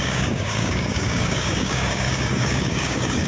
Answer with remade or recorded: remade